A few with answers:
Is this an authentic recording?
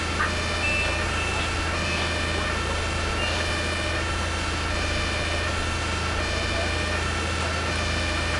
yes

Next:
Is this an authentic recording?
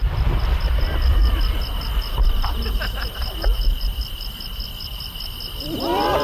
no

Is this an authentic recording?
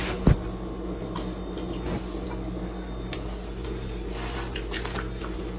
yes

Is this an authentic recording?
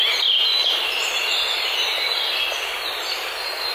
no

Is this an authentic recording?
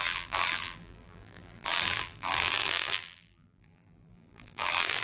no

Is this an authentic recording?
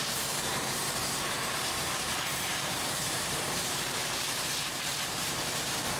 no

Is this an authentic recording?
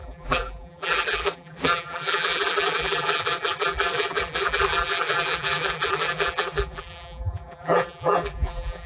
no